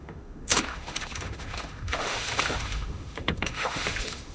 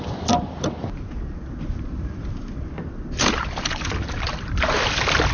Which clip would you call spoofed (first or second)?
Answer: first